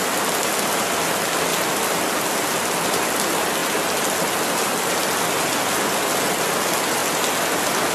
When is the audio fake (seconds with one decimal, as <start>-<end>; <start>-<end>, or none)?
none